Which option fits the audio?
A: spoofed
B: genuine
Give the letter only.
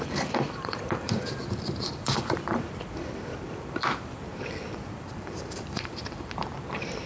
A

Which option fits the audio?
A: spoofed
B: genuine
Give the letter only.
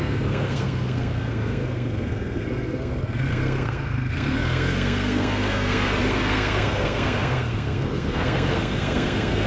A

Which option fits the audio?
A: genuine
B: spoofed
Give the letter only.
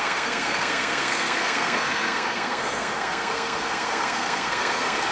B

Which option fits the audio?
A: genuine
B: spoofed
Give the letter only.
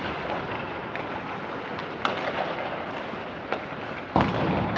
A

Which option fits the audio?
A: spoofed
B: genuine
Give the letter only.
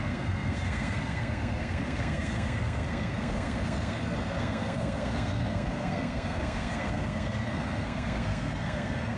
A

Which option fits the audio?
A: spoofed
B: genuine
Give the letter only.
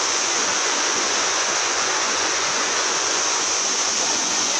A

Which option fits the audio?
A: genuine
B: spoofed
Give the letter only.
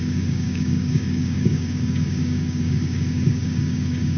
B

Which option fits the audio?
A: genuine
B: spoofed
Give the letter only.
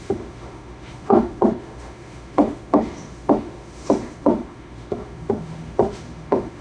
B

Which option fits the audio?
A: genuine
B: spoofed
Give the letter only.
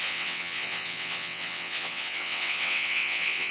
B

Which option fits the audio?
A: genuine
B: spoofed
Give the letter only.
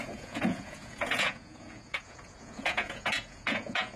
B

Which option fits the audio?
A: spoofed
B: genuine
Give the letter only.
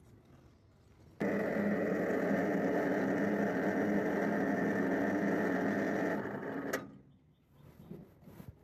B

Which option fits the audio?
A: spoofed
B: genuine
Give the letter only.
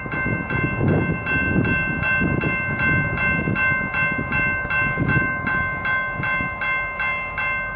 B